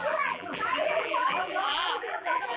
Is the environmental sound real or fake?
fake